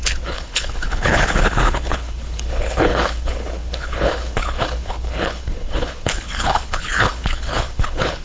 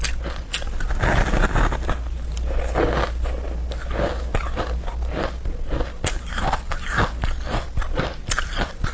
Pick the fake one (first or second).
first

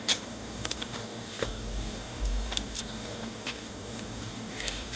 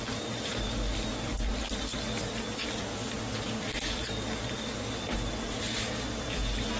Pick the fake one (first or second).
first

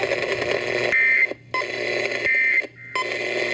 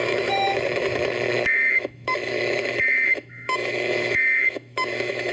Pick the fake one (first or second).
second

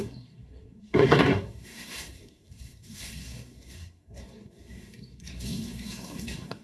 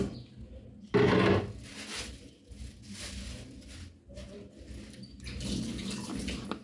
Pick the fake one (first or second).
first